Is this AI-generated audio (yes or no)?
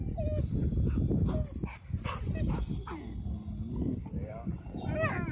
no